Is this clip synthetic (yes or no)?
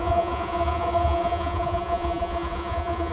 yes